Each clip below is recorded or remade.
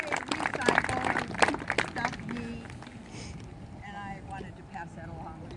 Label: recorded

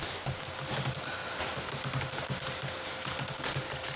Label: recorded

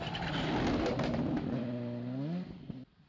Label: recorded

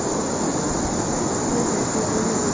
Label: recorded